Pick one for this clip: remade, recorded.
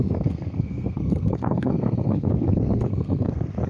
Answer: remade